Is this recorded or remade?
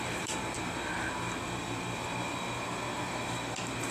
remade